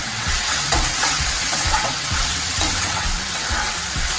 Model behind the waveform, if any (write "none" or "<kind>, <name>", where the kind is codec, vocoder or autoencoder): vocoder, WaveNeXt